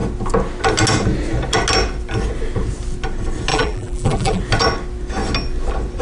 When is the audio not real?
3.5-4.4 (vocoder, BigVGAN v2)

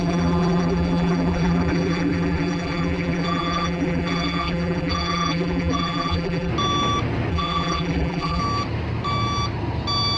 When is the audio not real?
0.0-6.5 (vocoder, BigVGAN v2); 7.3-8.4

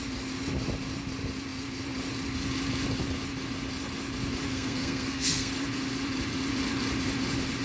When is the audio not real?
4.5-5.5 (codec, SNAC)

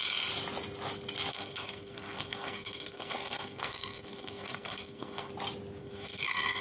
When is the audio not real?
1.3-5.3 (codec, SNAC); 5.8-6.6

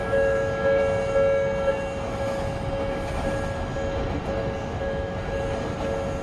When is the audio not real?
0.0-0.8 (autoencoder, DAC-VAE); 4.7-5.2